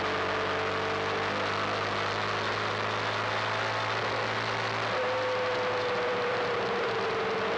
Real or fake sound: real